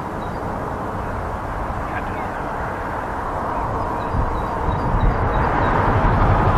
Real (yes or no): yes